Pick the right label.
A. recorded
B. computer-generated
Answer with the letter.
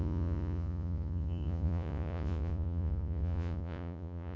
B